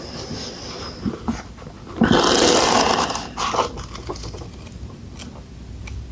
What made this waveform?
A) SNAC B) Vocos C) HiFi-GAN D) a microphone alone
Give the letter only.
D